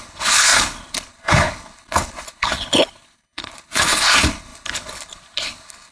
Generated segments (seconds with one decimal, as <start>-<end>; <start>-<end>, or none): 0.0-5.9

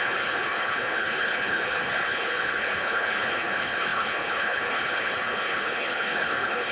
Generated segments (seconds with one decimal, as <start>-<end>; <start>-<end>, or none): 0.0-6.7

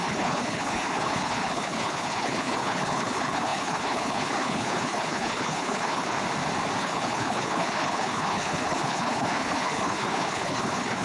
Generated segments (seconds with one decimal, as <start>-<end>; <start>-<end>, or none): 0.0-6.2; 6.8-11.0

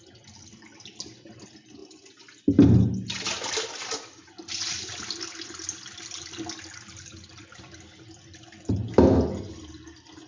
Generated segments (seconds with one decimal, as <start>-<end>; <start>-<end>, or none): none